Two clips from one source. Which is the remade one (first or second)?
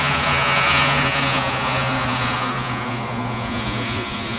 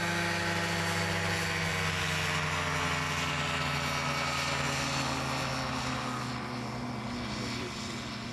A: first